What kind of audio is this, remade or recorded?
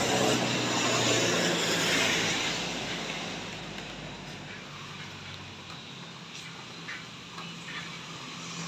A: recorded